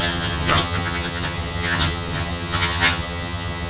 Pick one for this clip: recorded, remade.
remade